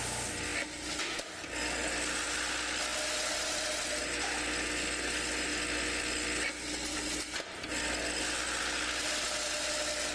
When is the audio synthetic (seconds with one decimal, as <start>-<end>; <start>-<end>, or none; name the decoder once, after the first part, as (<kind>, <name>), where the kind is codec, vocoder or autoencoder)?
none